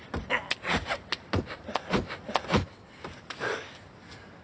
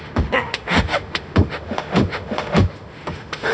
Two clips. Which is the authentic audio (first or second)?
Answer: first